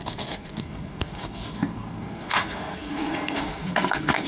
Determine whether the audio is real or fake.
fake